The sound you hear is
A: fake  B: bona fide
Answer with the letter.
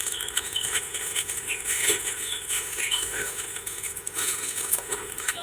A